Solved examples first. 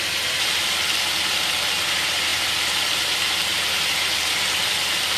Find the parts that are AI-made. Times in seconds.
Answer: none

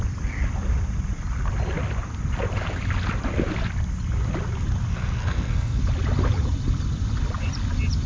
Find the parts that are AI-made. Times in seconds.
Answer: 4.9-5.8 (codec, SNAC)

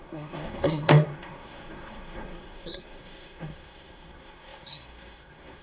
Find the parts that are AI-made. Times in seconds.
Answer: 0.0-5.6 (codec, SNAC)

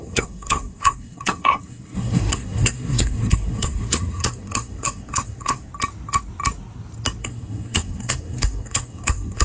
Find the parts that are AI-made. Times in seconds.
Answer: 0.0-5.7 (codec, SNAC); 7.2-9.4

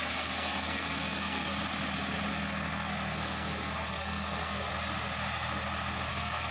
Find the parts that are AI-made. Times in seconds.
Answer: 0.0-1.5 (codec, SNAC); 2.3-4.7; 6.1-6.5

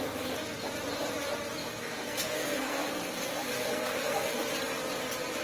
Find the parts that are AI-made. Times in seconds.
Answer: 1.6-4.5 (codec, SNAC)

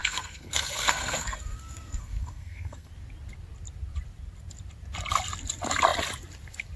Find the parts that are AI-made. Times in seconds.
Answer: 0.0-2.9 (codec, SNAC)